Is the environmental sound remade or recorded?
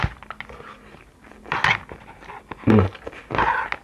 recorded